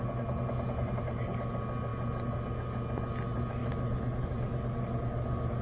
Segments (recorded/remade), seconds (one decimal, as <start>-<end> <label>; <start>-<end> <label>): 0.0-3.6 recorded; 3.6-4.3 remade; 4.3-5.6 recorded